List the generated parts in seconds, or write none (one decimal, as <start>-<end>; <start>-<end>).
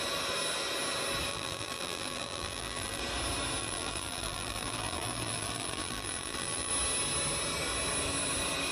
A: 1.3-3.0; 3.6-6.7